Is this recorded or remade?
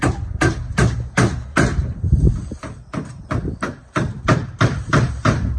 recorded